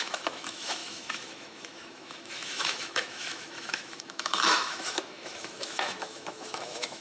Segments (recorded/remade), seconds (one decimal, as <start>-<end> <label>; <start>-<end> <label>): 0.0-7.0 remade

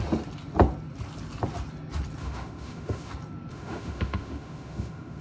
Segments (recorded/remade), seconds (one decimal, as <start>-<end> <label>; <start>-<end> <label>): 0.0-2.2 recorded; 2.2-3.1 remade; 3.1-3.5 recorded; 3.5-5.2 remade

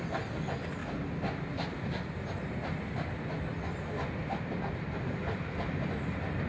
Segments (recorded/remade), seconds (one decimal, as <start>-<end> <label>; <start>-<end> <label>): 0.0-6.5 recorded

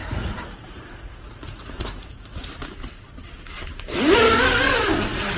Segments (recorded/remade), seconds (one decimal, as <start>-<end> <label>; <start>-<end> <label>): 0.0-2.5 remade; 2.5-5.4 recorded

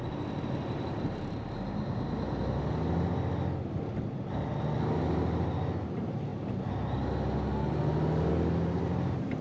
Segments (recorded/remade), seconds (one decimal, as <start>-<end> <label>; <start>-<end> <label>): 0.0-9.4 recorded

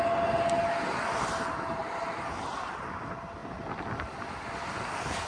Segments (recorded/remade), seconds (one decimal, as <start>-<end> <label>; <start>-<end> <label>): 0.0-5.3 recorded

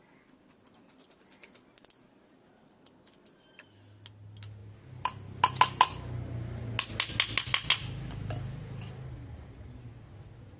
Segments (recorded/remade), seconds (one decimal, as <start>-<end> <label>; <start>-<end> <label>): 0.0-10.6 recorded